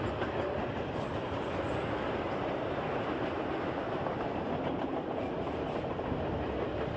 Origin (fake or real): real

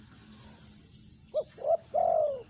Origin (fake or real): real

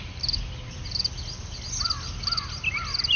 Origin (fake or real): real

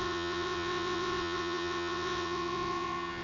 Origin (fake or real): fake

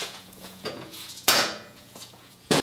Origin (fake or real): fake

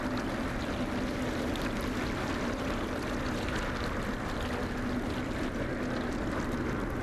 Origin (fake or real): real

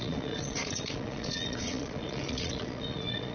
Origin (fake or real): fake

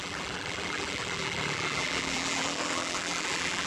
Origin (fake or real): fake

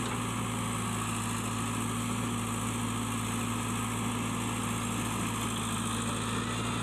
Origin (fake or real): real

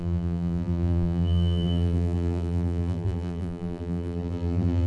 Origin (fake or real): fake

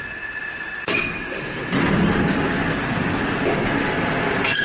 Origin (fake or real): real